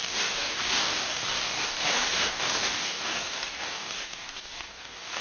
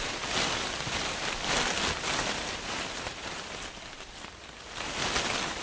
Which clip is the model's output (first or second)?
first